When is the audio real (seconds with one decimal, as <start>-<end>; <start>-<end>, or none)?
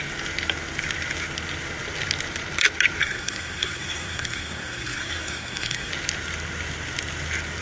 0.0-3.0; 5.9-7.6